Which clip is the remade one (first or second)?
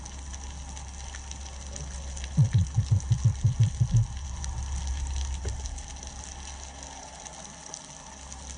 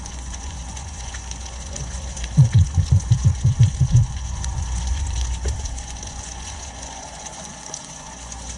second